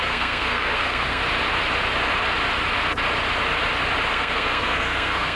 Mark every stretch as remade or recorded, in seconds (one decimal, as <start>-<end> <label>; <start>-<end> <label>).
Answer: 0.0-1.2 remade; 1.2-4.1 recorded; 4.1-5.4 remade